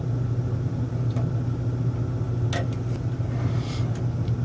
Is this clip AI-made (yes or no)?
no